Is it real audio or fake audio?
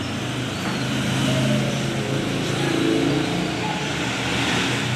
real